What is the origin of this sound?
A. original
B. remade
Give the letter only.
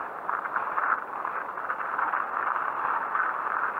A